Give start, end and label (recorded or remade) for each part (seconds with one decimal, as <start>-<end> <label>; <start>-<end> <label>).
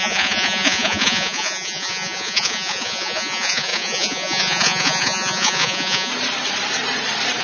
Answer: 0.0-6.1 remade; 6.1-7.4 recorded